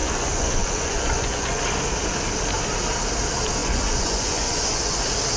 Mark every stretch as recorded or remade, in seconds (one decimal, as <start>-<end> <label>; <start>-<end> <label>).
0.0-1.6 remade; 1.6-3.6 recorded; 3.6-5.0 remade; 5.0-5.4 recorded